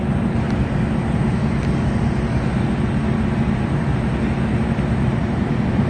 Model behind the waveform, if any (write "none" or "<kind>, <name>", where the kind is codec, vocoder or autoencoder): none